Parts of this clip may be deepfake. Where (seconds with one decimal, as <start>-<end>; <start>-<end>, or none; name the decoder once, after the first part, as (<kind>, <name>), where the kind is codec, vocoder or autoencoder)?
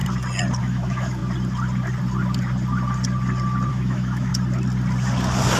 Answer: 0.6-1.2 (autoencoder, DAC-VAE); 3.7-4.3